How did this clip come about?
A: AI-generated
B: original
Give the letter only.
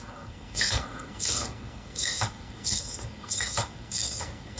A